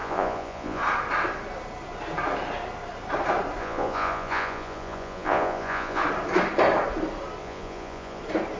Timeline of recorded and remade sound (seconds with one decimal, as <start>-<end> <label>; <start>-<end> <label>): 0.0-0.8 remade; 0.8-3.6 recorded; 3.6-6.0 remade; 6.0-7.4 recorded; 7.4-8.2 remade; 8.2-8.6 recorded